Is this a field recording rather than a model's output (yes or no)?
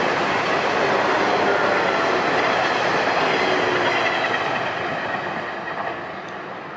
yes